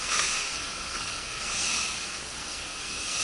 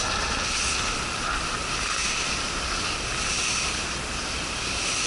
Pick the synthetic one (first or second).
first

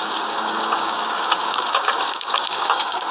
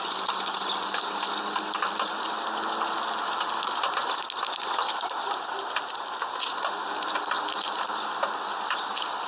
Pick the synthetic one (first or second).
first